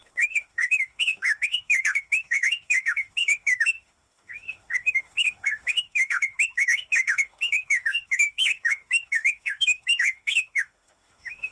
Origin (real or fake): fake